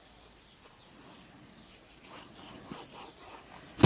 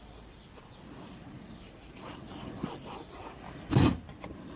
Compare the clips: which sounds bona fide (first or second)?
first